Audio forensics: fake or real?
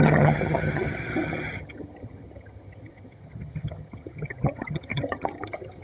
fake